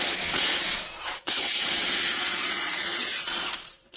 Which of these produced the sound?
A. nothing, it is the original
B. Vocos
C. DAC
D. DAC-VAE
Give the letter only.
B